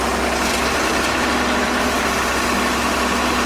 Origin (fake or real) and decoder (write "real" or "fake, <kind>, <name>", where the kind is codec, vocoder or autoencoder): real